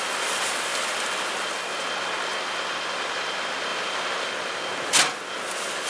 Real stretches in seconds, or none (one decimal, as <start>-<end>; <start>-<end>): 0.0-5.9